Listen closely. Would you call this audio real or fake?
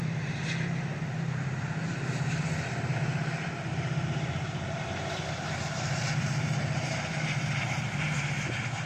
fake